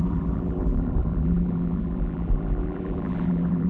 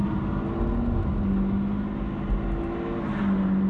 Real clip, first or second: second